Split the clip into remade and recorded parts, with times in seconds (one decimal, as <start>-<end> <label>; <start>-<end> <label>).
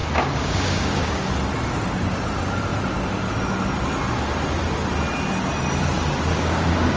0.0-1.3 remade; 1.3-6.3 recorded; 6.3-7.0 remade